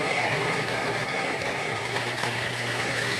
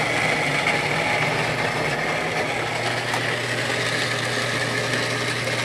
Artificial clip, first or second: first